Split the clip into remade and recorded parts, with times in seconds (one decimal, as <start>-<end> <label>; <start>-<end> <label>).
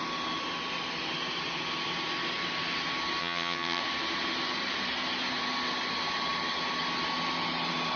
0.0-3.2 recorded; 3.2-3.8 remade; 3.8-8.0 recorded